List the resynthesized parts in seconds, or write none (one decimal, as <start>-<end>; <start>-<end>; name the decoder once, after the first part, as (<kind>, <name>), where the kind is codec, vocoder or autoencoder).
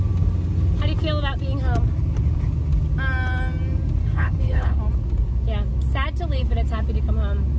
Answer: 4.0-4.8 (codec, HILCodec)